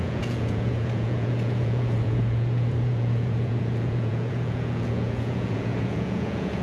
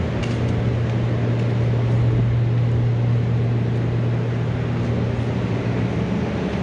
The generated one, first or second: first